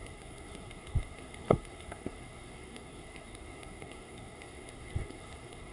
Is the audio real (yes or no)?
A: no